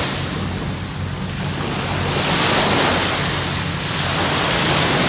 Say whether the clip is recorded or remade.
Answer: recorded